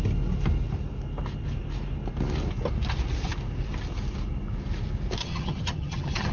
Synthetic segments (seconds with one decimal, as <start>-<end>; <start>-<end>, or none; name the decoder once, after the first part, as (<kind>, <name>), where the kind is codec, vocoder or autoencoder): 5.2-6.3 (vocoder, HiFi-GAN)

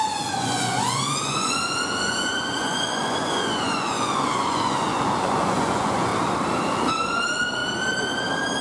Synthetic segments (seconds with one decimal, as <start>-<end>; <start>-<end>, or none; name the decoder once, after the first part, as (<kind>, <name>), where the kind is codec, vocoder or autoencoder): 0.0-6.1 (vocoder, Vocos); 6.7-7.6

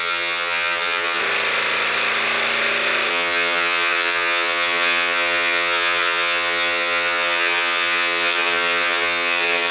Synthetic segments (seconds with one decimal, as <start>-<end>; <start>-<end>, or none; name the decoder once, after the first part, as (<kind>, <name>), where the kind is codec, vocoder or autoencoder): 0.0-1.2 (vocoder, HiFi-GAN); 3.1-9.7

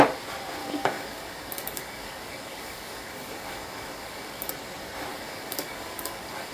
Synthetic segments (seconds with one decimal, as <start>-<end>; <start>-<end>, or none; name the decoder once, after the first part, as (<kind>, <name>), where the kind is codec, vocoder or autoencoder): 0.6-4.5 (codec, DAC); 5.1-6.5

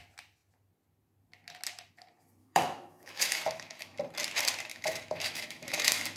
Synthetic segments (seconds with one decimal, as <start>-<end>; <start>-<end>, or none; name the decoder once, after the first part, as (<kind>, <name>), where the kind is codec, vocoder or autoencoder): 2.4-4.0 (autoencoder, DAC-VAE); 4.7-6.2

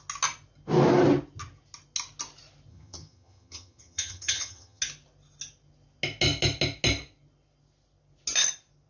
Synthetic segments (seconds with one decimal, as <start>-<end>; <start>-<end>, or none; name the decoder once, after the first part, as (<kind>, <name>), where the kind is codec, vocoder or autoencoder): 2.7-4.8 (vocoder, HiFi-GAN)

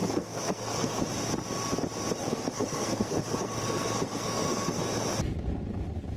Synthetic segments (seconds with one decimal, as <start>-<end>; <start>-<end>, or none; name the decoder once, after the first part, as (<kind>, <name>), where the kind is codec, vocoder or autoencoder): 0.0-1.0 (codec, SNAC); 2.2-4.8

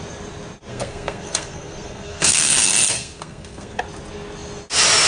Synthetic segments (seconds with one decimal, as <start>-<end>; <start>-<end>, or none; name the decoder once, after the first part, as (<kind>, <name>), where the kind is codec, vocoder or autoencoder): 0.7-3.8 (codec, SNAC)